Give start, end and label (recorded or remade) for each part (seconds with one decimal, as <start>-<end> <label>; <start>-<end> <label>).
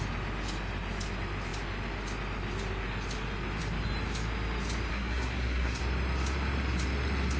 0.0-4.9 recorded; 4.9-5.8 remade; 5.8-7.4 recorded